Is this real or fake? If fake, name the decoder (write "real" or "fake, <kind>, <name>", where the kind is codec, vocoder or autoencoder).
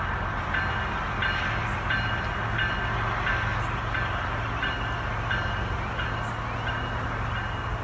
real